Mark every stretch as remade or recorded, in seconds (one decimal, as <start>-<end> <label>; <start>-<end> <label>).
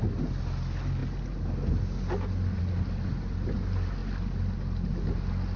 0.0-5.6 recorded